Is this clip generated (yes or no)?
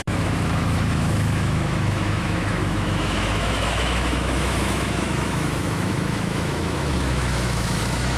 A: yes